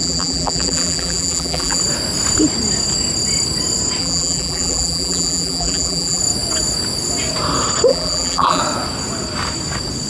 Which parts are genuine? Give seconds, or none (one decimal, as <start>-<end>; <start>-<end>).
1.8-4.0; 6.2-7.9; 8.6-10.1